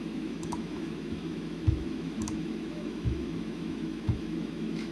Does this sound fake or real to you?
fake